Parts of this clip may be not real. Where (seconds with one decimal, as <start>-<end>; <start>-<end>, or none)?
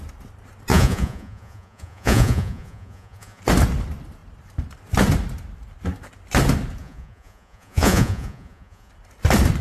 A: 0.7-3.4; 6.8-8.9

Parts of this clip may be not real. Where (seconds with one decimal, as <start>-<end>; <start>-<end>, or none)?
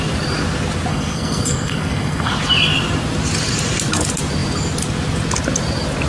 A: 0.9-2.3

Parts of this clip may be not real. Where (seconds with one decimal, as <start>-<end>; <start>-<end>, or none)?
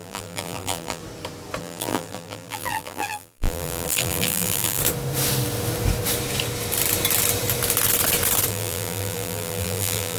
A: 0.0-1.0; 1.6-4.8; 8.5-10.2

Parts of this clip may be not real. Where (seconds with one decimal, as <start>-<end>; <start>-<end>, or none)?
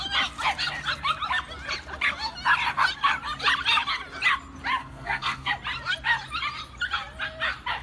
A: 4.8-5.5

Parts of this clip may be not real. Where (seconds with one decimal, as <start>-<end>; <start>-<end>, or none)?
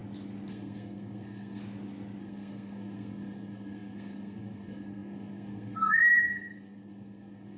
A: 0.5-1.6; 2.2-7.6